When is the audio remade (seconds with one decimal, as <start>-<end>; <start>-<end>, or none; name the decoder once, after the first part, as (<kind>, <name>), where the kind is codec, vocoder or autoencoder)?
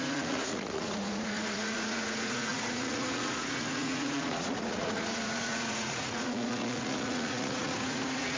0.0-8.4 (vocoder, Vocos)